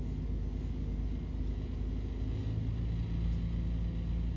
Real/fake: real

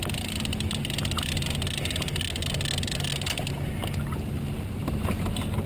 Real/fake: real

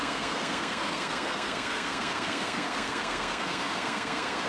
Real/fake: fake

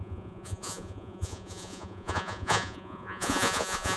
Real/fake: fake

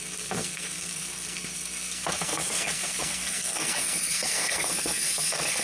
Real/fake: fake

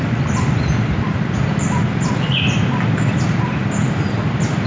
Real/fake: real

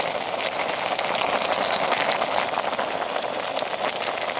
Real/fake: real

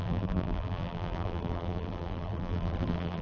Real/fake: fake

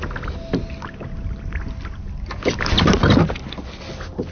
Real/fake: real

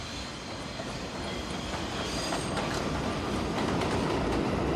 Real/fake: real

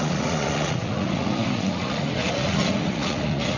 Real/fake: fake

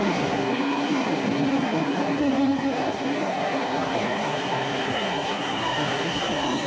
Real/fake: fake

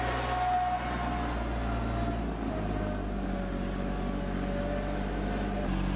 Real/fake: real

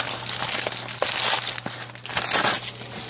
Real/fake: real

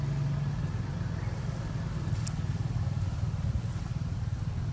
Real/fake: real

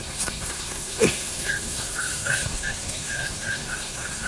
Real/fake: fake